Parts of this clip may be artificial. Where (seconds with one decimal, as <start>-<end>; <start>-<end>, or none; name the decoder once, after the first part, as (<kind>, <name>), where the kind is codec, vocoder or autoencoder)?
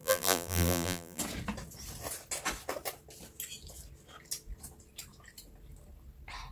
0.0-1.2 (vocoder, BigVGAN v2)